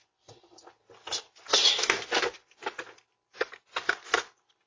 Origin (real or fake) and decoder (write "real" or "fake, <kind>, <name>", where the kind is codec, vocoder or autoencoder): real